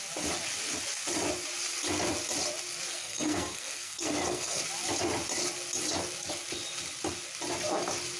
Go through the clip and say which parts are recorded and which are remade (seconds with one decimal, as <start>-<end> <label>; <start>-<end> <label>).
0.0-2.9 recorded; 2.9-4.6 remade; 4.6-8.2 recorded